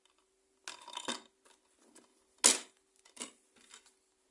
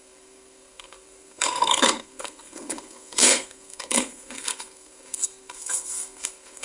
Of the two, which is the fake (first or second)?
second